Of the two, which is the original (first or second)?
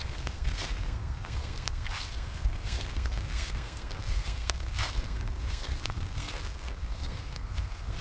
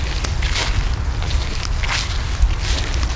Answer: second